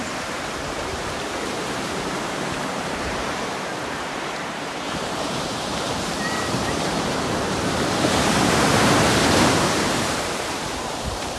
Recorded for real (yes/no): no